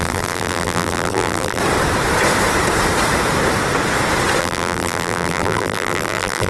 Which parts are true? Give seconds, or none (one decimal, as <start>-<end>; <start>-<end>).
1.6-4.4

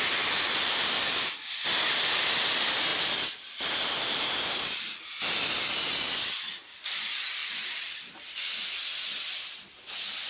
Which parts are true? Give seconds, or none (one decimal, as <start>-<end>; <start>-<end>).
none

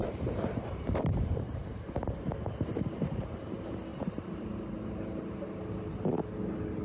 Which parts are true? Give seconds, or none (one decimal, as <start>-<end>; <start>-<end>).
2.1-3.9; 5.6-6.8